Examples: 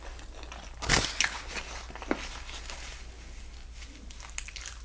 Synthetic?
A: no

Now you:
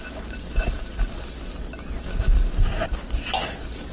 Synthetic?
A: no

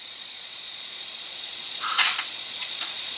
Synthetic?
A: yes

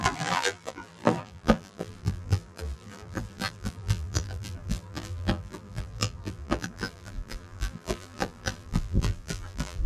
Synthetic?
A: yes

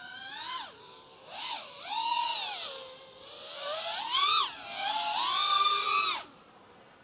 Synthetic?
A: no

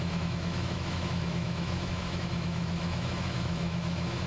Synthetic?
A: yes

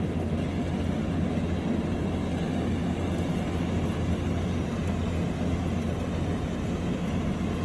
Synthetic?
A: no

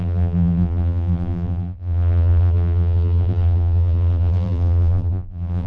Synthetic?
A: yes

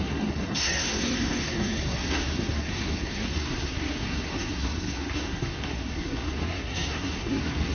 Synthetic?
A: yes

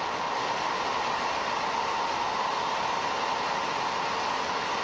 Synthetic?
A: no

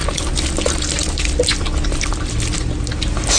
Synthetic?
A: no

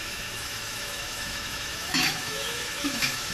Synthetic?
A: yes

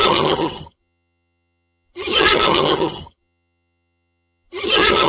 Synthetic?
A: yes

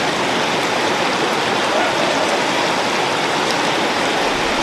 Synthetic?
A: no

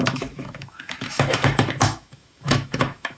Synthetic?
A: yes